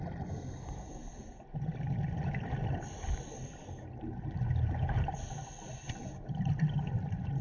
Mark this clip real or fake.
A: real